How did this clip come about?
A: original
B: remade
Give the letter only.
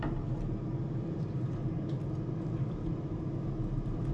A